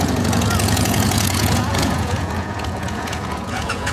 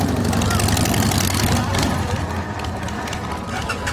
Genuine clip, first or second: second